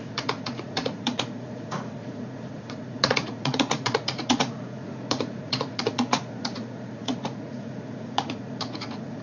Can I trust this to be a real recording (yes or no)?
no